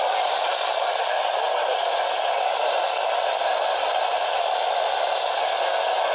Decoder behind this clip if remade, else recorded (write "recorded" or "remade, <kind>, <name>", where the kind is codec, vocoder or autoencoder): recorded